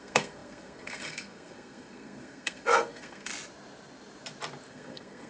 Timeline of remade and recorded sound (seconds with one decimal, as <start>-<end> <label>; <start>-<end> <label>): 0.0-3.3 remade; 3.3-4.7 recorded; 4.7-5.3 remade